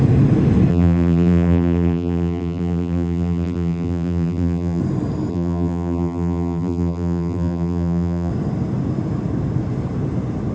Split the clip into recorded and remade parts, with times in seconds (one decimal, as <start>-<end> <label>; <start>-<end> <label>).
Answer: 0.0-0.7 recorded; 0.7-4.8 remade; 4.8-5.3 recorded; 5.3-8.3 remade; 8.3-10.5 recorded

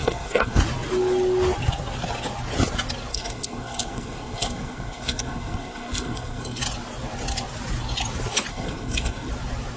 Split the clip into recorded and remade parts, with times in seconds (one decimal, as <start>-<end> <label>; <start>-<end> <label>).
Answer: 0.0-0.6 remade; 0.6-3.1 recorded; 3.1-6.6 remade; 6.6-8.5 recorded; 8.5-9.3 remade; 9.3-9.8 recorded